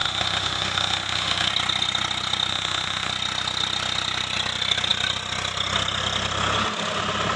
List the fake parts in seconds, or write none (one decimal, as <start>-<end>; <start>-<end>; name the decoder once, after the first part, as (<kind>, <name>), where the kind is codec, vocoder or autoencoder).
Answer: 0.0-1.5 (autoencoder, DAC-VAE); 2.5-3.1